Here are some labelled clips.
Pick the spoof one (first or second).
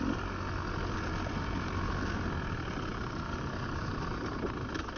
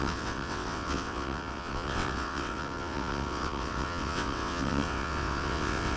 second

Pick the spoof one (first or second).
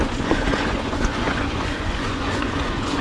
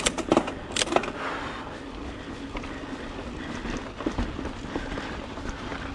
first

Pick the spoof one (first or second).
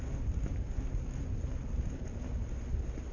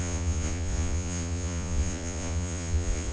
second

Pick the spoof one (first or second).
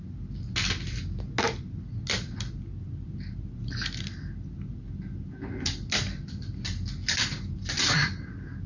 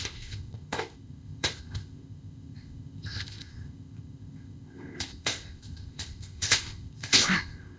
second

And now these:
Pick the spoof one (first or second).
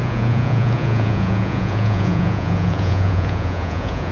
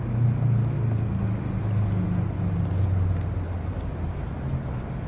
first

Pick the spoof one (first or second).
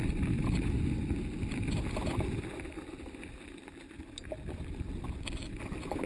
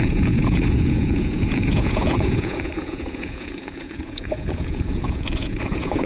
second